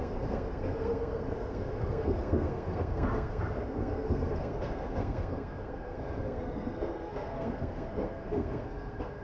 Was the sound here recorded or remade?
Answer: remade